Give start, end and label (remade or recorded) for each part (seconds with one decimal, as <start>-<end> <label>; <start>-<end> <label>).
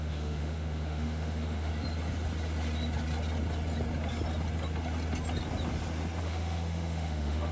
0.0-1.7 remade; 1.7-6.2 recorded; 6.2-7.5 remade